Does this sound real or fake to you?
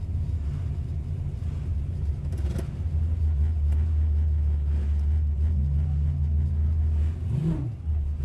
real